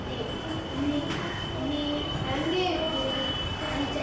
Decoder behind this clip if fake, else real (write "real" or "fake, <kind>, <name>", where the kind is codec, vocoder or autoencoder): real